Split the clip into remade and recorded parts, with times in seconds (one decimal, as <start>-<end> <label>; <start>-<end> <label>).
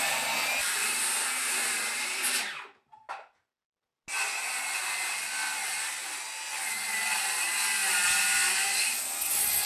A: 0.0-0.6 recorded; 0.6-3.3 remade; 3.3-9.7 recorded